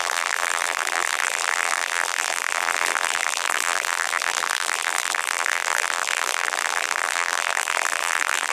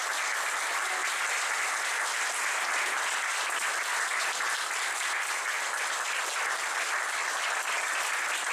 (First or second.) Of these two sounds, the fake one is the first